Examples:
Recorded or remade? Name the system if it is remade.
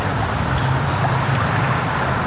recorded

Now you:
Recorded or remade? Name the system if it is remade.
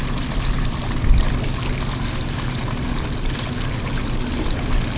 recorded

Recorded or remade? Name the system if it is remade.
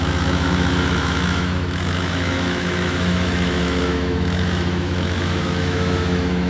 remade, autoencoder, DAC-VAE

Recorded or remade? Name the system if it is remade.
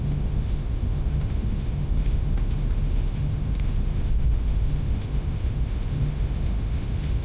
remade, autoencoder, DAC-VAE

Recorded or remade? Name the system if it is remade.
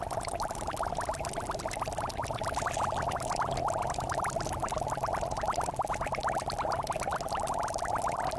recorded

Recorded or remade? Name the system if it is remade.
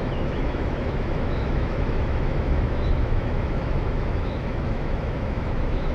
remade, autoencoder, DAC-VAE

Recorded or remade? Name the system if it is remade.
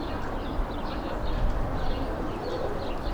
recorded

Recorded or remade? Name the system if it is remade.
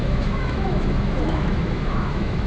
remade, autoencoder, DAC-VAE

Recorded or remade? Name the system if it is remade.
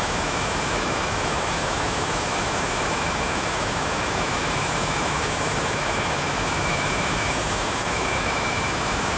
remade, autoencoder, DAC-VAE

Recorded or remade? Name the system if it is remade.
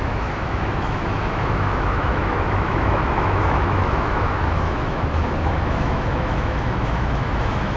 remade, autoencoder, DAC-VAE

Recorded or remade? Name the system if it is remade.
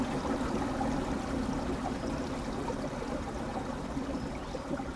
recorded